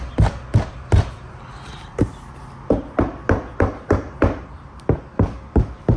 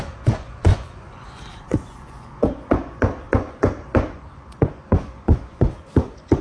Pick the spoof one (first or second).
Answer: second